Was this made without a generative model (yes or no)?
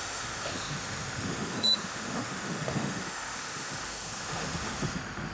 no